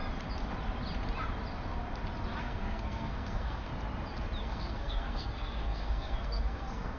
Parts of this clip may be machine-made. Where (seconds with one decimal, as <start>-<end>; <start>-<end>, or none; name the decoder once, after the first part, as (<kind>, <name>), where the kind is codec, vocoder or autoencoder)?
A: 2.4-3.7 (codec, SNAC); 4.4-7.0